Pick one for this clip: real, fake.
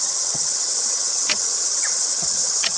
fake